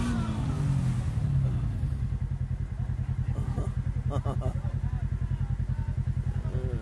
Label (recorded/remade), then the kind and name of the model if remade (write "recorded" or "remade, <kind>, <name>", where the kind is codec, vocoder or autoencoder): recorded